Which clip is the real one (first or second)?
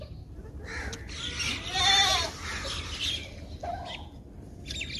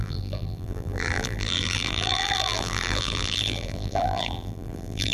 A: first